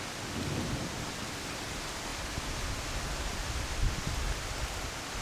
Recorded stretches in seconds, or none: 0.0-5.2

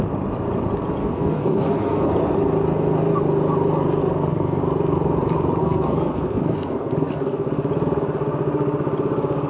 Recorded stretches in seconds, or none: 0.0-1.0; 2.1-4.0; 4.6-5.6; 7.5-9.5

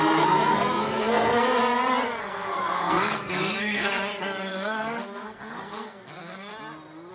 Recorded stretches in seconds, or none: 1.6-2.2; 6.5-7.1

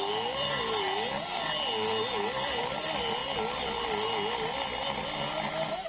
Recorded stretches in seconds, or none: 0.0-5.9

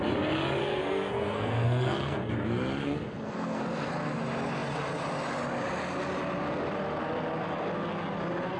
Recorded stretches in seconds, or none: 0.0-0.6; 2.3-2.8; 3.9-8.6